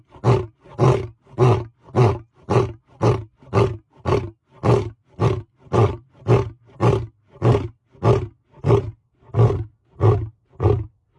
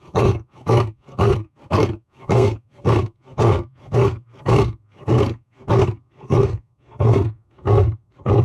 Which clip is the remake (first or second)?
second